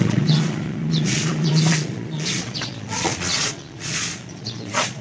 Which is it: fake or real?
fake